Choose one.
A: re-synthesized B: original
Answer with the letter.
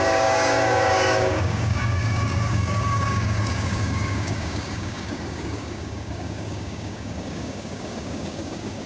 A